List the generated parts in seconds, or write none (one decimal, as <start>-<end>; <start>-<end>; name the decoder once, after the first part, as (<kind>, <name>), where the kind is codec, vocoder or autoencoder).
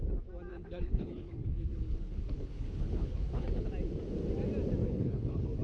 0.5-3.7 (codec, HILCodec); 4.8-5.6